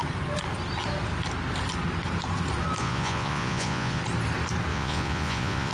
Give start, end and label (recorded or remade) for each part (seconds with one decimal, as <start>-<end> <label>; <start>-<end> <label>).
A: 0.0-2.8 recorded; 2.8-4.0 remade; 4.0-4.7 recorded; 4.7-5.7 remade

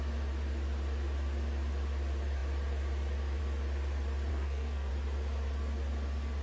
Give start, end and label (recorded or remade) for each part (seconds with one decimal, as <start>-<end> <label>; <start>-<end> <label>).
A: 0.0-4.3 recorded; 4.3-4.9 remade; 4.9-6.4 recorded

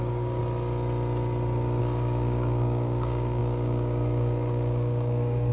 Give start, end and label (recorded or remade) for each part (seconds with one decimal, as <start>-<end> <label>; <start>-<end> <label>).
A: 0.0-0.4 remade; 0.4-1.8 recorded; 1.8-5.5 remade

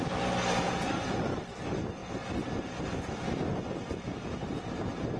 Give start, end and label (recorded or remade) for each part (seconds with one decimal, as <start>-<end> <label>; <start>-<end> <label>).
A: 0.0-5.2 recorded

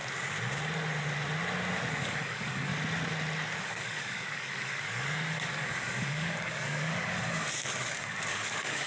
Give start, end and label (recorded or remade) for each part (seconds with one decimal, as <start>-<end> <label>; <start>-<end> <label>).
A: 0.0-1.9 recorded; 1.9-2.7 remade; 2.7-3.6 recorded; 3.6-8.9 remade

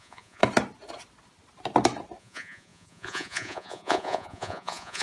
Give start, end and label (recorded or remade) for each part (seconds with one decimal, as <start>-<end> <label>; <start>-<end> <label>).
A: 0.0-0.4 remade; 0.4-2.2 recorded; 2.2-5.0 remade

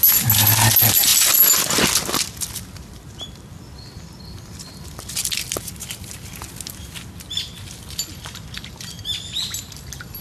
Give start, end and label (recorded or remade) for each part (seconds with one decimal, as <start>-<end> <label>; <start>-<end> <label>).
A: 0.0-10.2 recorded

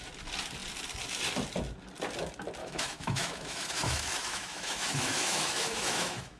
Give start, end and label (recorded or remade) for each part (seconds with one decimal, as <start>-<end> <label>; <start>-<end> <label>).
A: 0.0-2.6 recorded; 2.6-6.4 remade